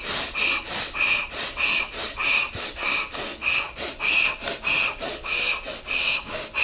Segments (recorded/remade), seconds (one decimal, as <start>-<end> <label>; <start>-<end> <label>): 0.0-3.3 recorded; 3.3-3.9 remade; 3.9-6.6 recorded